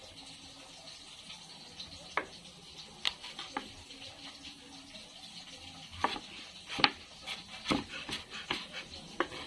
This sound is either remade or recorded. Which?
recorded